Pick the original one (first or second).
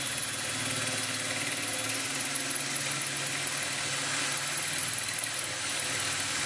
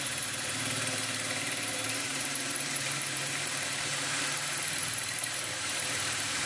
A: first